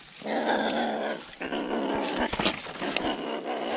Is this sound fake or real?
real